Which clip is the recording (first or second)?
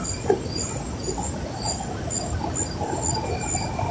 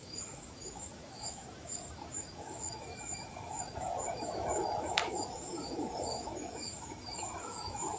first